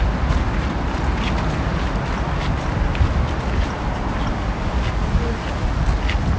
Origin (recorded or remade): recorded